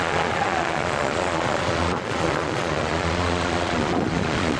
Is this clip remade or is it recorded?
remade